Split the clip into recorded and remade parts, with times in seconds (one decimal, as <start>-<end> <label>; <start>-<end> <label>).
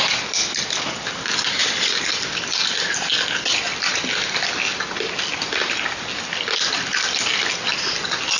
0.0-8.4 recorded